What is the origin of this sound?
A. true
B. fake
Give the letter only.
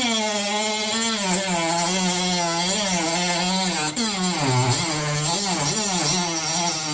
A